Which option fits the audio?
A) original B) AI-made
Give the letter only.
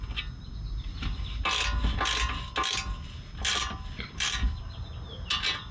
A